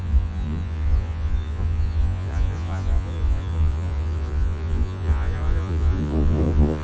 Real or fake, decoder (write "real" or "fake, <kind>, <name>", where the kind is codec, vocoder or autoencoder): fake, vocoder, Vocos